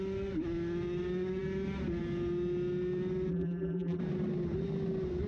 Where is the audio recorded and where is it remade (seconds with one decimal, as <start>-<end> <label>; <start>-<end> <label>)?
0.0-3.3 recorded; 3.3-4.0 remade; 4.0-5.3 recorded